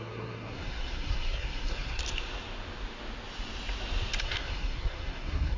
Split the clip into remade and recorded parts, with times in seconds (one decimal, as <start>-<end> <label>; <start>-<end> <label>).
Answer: 0.0-2.0 remade; 2.0-4.2 recorded; 4.2-5.6 remade